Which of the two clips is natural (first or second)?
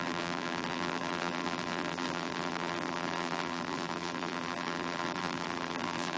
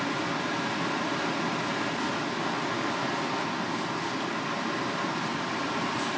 second